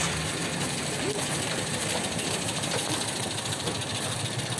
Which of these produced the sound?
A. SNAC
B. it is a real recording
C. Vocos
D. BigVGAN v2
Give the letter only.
B